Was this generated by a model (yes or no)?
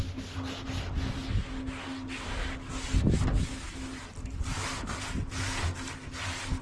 no